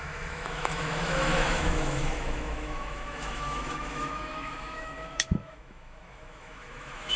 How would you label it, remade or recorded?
remade